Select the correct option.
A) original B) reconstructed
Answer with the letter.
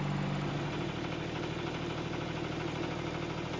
A